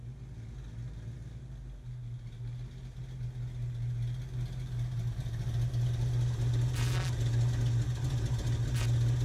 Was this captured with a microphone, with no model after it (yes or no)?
yes